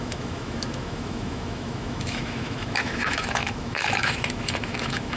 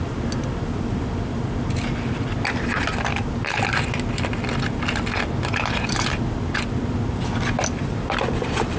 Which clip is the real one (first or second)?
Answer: second